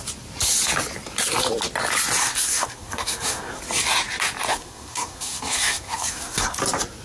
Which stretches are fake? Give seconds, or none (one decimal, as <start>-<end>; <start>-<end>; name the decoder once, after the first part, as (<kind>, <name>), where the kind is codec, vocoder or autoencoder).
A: 2.2-3.6 (codec, SNAC); 4.5-6.6